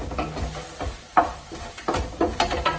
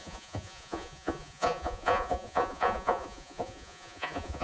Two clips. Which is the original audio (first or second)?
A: first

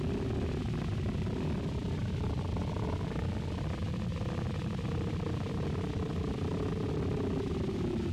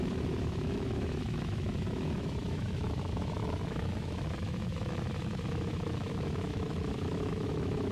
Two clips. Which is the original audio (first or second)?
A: first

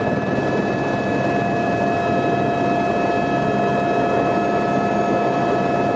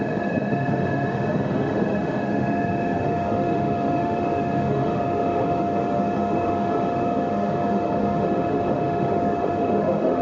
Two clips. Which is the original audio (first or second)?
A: first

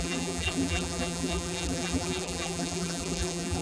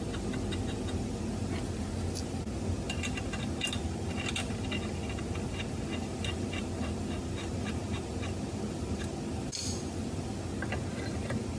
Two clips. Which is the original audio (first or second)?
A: second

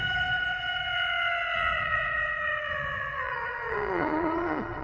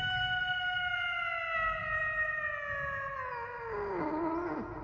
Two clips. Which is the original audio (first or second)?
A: second